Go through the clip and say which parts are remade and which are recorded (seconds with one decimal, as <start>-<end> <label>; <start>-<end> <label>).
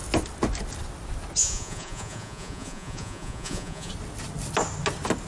0.0-1.4 recorded; 1.4-3.9 remade; 3.9-5.3 recorded